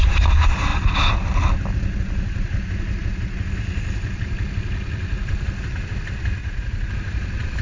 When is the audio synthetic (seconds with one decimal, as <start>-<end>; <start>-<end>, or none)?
6.4-6.9